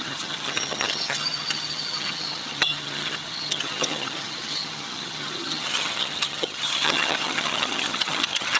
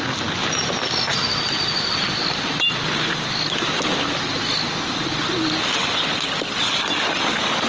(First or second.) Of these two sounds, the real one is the second